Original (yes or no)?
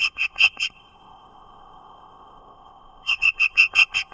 no